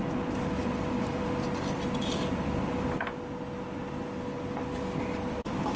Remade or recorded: recorded